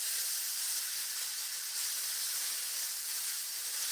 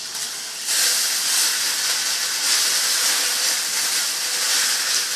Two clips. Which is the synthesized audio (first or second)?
first